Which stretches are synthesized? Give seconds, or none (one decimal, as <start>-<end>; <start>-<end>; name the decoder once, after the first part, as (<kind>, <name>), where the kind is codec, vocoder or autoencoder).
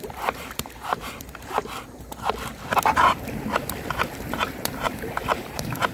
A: 0.0-1.6 (vocoder, BigVGAN v2); 4.2-5.9